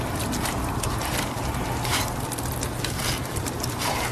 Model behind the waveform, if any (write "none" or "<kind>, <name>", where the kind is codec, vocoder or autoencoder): none